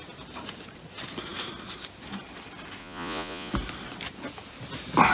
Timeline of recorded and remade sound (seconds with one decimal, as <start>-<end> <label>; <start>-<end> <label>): 0.0-2.8 recorded; 2.8-3.5 remade; 3.5-5.1 recorded